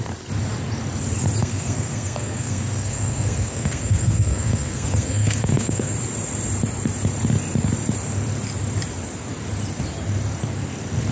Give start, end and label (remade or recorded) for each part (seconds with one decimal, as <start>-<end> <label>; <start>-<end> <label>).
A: 0.0-1.4 recorded; 1.4-5.9 remade; 5.9-11.1 recorded